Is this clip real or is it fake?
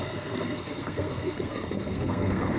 fake